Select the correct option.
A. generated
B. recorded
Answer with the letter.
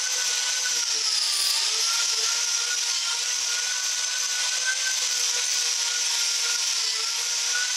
B